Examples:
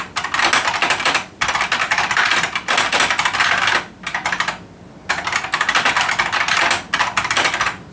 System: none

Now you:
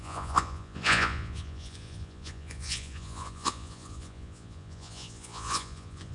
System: vocoder, Vocos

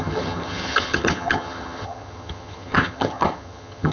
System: vocoder, HiFi-GAN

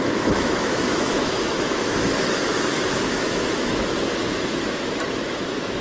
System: autoencoder, DAC-VAE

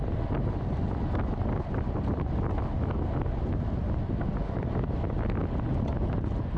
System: none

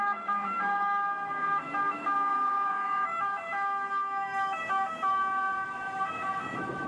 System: autoencoder, DAC-VAE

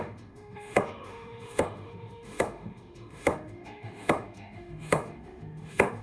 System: autoencoder, DAC-VAE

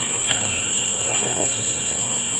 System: codec, SNAC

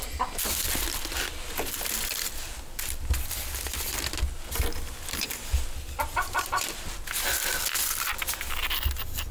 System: none